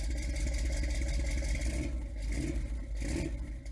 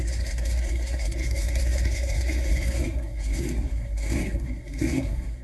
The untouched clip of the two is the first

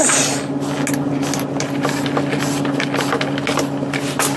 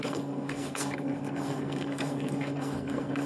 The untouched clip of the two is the first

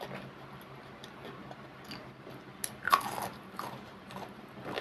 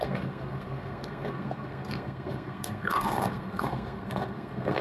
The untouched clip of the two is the first